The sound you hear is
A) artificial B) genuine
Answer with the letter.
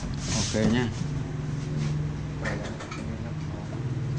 B